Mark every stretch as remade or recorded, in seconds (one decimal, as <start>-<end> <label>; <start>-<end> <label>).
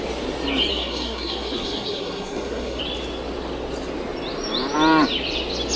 0.0-0.7 recorded; 0.7-2.8 remade; 2.8-5.8 recorded